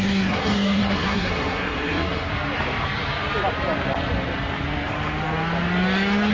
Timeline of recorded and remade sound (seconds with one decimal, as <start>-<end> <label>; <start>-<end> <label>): 0.0-2.3 remade; 2.3-6.3 recorded